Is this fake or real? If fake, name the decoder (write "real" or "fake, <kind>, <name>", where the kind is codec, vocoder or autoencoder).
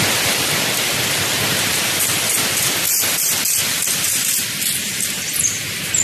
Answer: real